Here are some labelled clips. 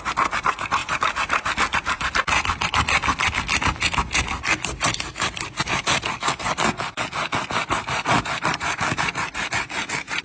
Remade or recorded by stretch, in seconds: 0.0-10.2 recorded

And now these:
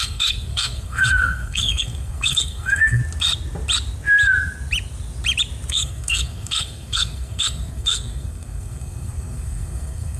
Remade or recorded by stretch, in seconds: 0.0-3.0 remade; 3.0-5.7 recorded; 5.7-10.2 remade

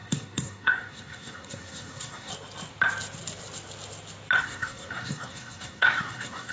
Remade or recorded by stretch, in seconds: 0.0-2.3 remade; 2.3-4.4 recorded; 4.4-6.5 remade

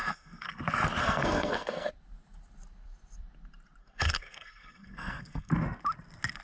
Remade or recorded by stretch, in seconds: 0.0-0.6 remade; 0.6-1.0 recorded; 1.0-1.9 remade; 1.9-3.8 recorded; 3.8-5.5 remade; 5.5-6.4 recorded

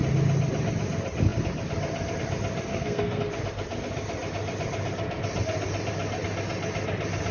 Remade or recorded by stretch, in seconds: 0.0-2.7 recorded; 2.7-3.2 remade; 3.2-7.3 recorded

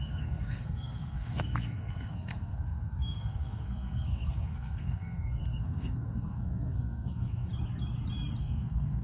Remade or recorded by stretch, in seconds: 0.0-7.5 remade; 7.5-8.4 recorded; 8.4-9.0 remade

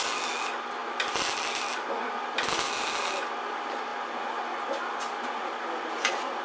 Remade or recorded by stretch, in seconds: 0.0-6.4 recorded